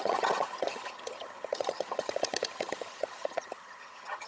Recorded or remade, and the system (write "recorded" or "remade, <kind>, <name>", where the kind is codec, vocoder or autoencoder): remade, vocoder, HiFi-GAN